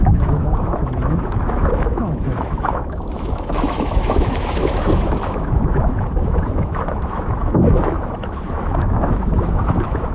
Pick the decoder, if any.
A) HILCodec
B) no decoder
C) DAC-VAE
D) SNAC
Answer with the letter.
C